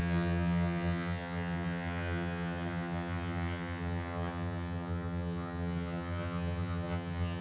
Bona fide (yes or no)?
no